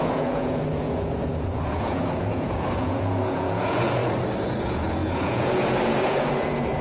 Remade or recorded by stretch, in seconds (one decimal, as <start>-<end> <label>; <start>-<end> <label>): 0.0-4.0 remade; 4.0-4.5 recorded; 4.5-6.8 remade